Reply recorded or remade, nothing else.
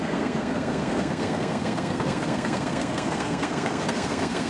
remade